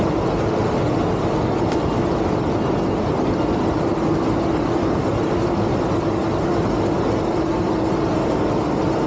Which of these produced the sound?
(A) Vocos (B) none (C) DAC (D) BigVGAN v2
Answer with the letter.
B